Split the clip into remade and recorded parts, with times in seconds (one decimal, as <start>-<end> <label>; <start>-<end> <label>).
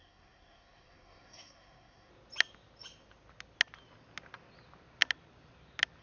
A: 0.0-2.1 remade; 2.1-6.0 recorded